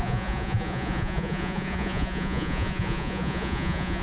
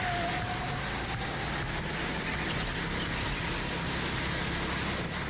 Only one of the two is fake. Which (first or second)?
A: first